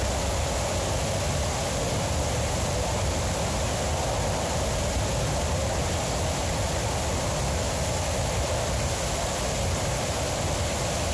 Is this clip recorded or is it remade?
recorded